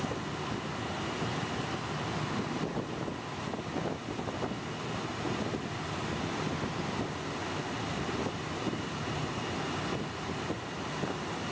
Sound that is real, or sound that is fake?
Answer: real